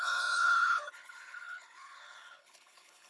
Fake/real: fake